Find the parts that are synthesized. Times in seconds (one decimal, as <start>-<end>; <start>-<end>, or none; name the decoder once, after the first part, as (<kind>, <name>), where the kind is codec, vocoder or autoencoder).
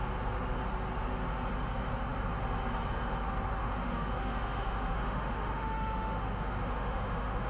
3.6-7.5 (autoencoder, DAC-VAE)